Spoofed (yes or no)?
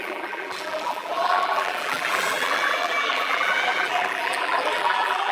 yes